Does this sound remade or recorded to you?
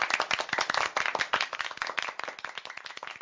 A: recorded